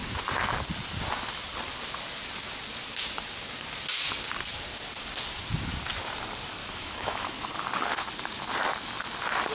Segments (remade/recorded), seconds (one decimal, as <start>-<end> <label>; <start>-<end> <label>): 0.0-6.6 recorded; 6.6-7.3 remade; 7.3-9.5 recorded